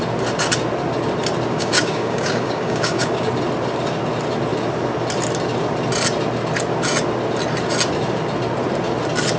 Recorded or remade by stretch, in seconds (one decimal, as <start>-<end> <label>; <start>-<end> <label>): 0.0-1.5 recorded; 1.5-3.3 remade; 3.3-9.4 recorded